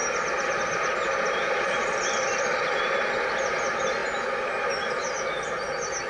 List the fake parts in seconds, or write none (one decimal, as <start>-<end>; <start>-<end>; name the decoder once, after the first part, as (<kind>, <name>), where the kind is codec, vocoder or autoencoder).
none